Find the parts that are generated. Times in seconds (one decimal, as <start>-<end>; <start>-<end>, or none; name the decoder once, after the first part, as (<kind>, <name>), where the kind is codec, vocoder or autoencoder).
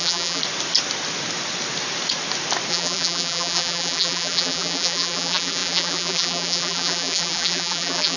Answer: 0.0-0.4 (vocoder, BigVGAN v2); 2.7-8.2